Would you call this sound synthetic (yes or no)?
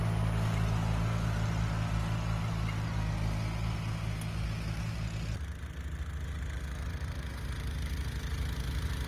no